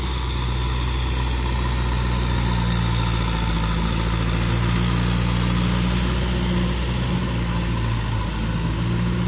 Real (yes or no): yes